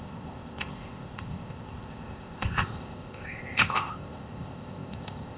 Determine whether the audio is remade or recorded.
remade